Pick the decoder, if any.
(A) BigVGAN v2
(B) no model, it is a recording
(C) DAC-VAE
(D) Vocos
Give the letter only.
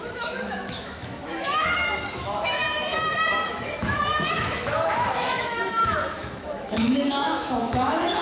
C